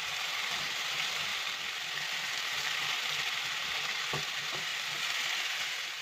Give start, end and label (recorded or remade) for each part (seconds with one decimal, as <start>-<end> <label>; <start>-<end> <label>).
0.0-1.3 remade; 1.3-3.5 recorded; 3.5-4.7 remade; 4.7-5.4 recorded; 5.4-6.0 remade